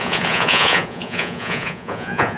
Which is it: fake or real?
fake